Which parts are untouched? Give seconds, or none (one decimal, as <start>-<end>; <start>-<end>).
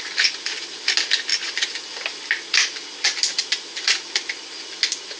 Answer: 0.0-5.2